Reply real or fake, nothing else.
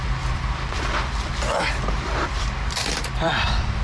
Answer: fake